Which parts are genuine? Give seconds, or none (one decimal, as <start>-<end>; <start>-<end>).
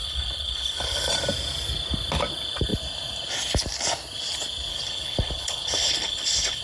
1.1-4.7